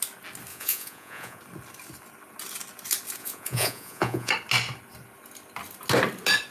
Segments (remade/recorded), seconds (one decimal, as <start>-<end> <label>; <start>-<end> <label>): 0.0-0.5 recorded; 0.5-1.4 remade; 1.4-3.2 recorded; 3.2-4.3 remade; 4.3-6.5 recorded